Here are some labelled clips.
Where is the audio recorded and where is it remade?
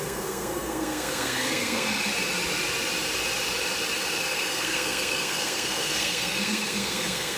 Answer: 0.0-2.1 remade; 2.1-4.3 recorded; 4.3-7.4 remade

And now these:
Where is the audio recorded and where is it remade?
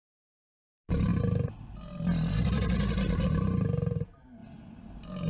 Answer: 0.0-5.3 recorded